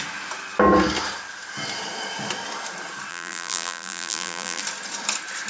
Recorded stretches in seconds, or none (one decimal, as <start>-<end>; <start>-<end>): 0.0-3.1; 4.6-5.5